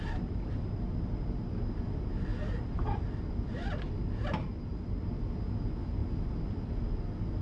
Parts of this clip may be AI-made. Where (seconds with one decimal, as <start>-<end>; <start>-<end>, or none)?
2.3-3.9; 6.0-6.6